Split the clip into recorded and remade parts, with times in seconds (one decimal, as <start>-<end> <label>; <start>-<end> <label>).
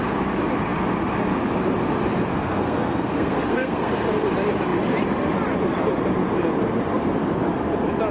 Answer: 0.0-2.3 recorded; 2.3-4.0 remade; 4.0-8.1 recorded